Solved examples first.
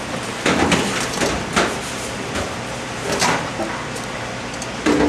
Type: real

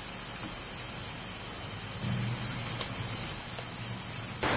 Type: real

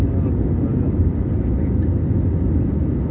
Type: real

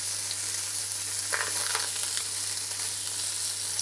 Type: real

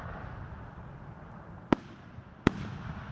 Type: real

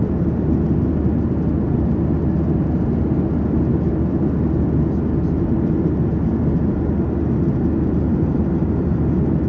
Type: real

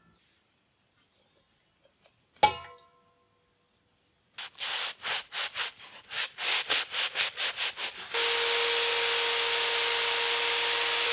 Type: real